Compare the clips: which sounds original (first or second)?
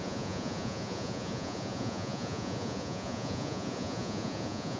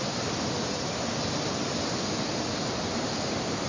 second